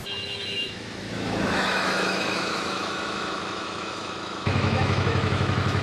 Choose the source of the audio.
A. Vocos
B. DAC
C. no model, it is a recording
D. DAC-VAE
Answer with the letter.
D